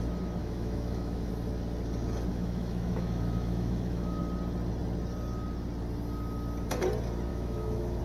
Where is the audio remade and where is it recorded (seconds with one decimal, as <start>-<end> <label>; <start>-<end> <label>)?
0.0-0.4 recorded; 0.4-1.3 remade; 1.3-2.3 recorded; 2.3-4.2 remade; 4.2-7.3 recorded; 7.3-8.0 remade